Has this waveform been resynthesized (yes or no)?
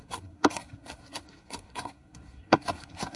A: yes